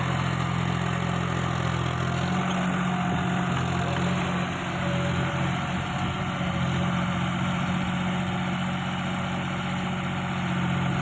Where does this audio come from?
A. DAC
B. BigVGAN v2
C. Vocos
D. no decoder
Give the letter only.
D